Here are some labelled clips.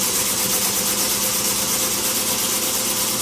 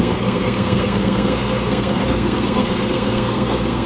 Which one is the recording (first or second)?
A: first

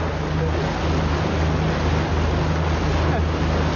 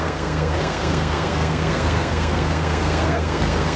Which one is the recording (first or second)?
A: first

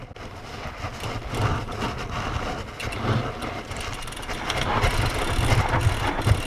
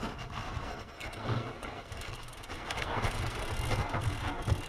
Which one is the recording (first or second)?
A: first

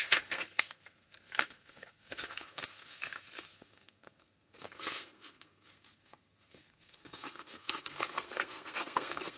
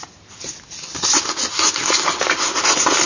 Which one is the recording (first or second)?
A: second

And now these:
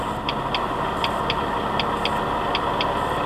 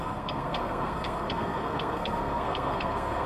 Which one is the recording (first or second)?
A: first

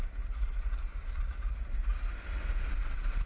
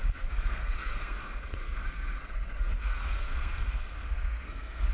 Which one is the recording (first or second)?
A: first